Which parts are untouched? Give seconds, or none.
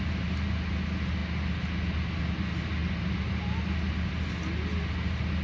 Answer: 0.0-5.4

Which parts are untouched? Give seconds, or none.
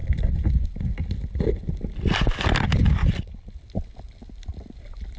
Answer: 0.0-5.2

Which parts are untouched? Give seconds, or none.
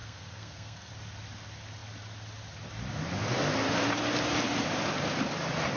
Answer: 0.9-5.8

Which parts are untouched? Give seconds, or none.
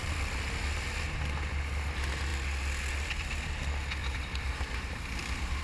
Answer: 0.0-4.0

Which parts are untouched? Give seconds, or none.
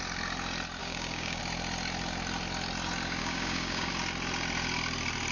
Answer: 0.0-0.8; 1.4-3.2; 3.9-5.3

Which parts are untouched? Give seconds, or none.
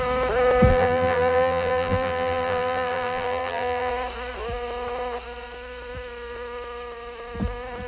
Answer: 0.0-0.7; 3.9-7.9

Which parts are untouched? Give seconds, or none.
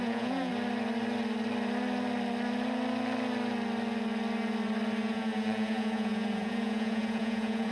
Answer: 0.5-5.1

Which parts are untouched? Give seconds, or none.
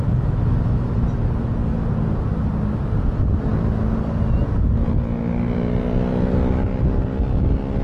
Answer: 0.0-7.8